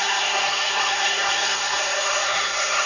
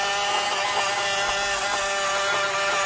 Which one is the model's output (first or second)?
first